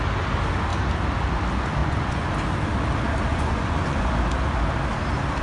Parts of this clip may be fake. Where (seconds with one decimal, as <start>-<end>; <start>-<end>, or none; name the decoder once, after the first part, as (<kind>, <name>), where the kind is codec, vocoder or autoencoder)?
1.8-2.3 (vocoder, Vocos); 3.3-4.1